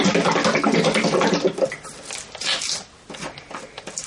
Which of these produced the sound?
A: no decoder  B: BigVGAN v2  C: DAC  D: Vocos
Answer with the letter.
A